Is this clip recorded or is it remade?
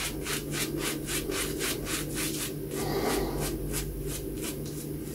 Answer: recorded